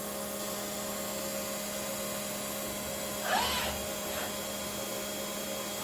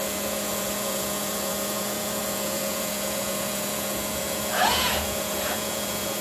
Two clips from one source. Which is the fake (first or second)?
second